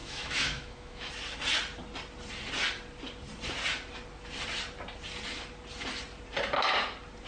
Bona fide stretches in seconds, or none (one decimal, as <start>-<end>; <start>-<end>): 1.1-7.3